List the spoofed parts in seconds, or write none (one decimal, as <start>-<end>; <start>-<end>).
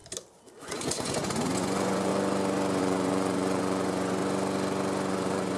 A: 0.6-2.1; 2.8-4.2; 5.1-5.6